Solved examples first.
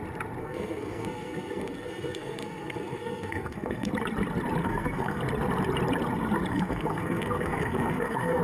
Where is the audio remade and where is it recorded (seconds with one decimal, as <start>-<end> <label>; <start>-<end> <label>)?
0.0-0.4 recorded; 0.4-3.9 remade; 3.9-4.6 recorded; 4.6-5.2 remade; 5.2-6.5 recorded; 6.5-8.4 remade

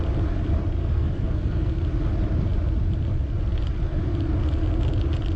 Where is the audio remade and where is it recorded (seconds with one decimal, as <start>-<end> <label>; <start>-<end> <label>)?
0.0-0.8 recorded; 0.8-1.7 remade; 1.7-5.4 recorded

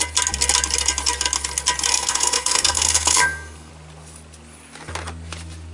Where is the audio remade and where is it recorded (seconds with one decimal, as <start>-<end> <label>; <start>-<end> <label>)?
0.0-1.9 recorded; 1.9-3.7 remade; 3.7-5.7 recorded